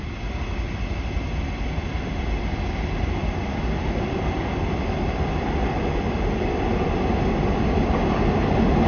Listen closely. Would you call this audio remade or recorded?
recorded